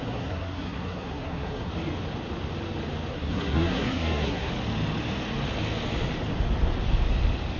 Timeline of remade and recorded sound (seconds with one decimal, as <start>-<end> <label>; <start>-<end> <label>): 0.0-1.7 remade; 1.7-3.1 recorded; 3.1-4.5 remade; 4.5-7.6 recorded